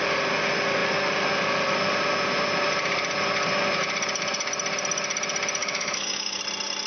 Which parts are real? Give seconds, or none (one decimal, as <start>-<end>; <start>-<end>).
0.0-5.6; 6.4-6.9